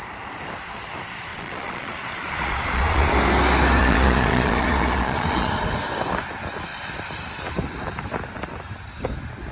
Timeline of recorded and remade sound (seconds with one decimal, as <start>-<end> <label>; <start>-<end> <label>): 0.0-1.3 recorded; 1.3-3.1 remade; 3.1-3.8 recorded; 3.8-5.5 remade; 5.5-9.5 recorded